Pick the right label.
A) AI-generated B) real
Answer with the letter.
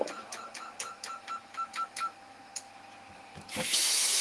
A